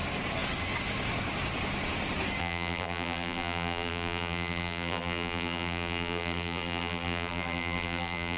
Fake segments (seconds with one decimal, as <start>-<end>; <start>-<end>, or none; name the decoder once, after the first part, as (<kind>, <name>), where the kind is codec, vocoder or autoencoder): 2.4-8.4 (vocoder, BigVGAN v2)